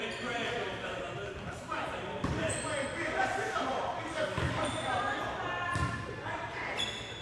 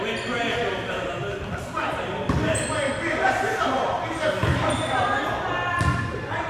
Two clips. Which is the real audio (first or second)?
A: second